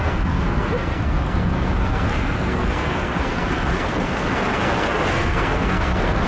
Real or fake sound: fake